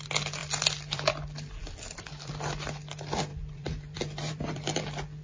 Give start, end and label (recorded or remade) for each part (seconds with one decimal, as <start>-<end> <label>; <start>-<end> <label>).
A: 0.0-0.4 recorded; 0.4-1.1 remade; 1.1-1.6 recorded; 1.6-2.3 remade; 2.3-3.3 recorded; 3.3-5.2 remade